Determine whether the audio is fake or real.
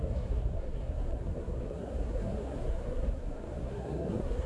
fake